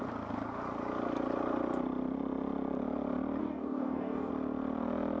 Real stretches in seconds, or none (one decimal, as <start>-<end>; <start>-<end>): 0.0-3.4; 4.3-5.2